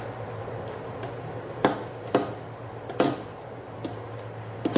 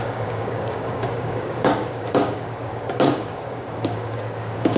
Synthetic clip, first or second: second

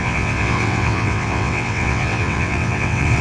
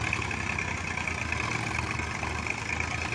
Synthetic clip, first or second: first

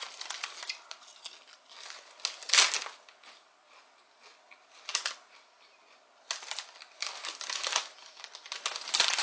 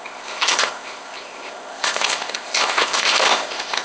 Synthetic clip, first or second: second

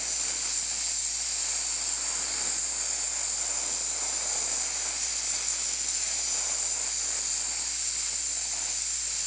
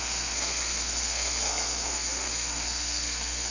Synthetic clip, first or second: second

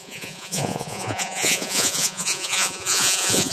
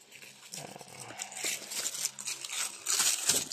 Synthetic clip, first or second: first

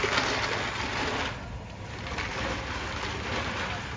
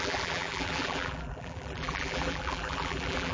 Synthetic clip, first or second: second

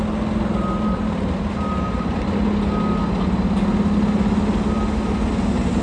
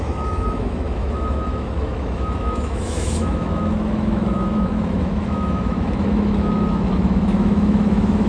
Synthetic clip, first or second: second